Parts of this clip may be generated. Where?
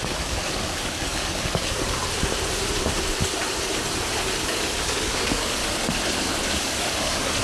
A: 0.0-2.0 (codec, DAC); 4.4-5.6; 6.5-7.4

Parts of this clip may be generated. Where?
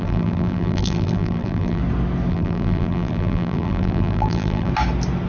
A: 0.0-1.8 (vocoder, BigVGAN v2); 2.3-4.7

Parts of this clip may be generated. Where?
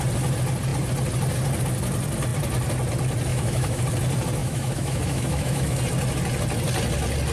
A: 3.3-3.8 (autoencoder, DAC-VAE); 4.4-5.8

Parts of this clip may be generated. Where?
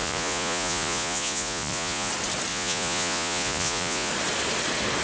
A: 0.0-2.1 (vocoder, Vocos); 2.5-4.1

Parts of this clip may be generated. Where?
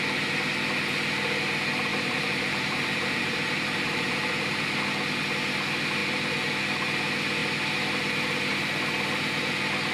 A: 1.9-4.8 (vocoder, BigVGAN v2)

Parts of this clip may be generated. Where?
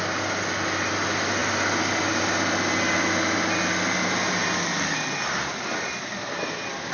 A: none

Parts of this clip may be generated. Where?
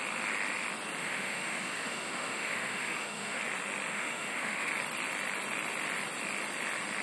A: 1.0-3.4 (autoencoder, DAC-VAE); 3.9-4.7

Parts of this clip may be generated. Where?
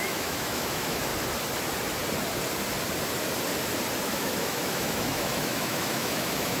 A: 0.0-1.1 (autoencoder, DAC-VAE); 4.0-6.6